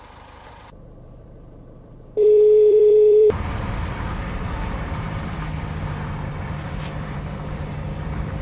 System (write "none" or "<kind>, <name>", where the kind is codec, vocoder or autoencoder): vocoder, BigVGAN v2